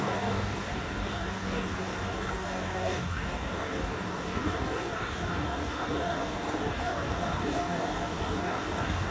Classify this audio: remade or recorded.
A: remade